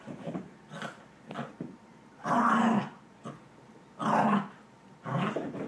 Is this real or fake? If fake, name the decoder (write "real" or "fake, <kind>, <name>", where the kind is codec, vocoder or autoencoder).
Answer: real